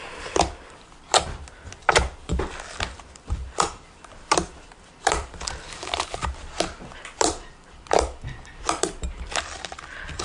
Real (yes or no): no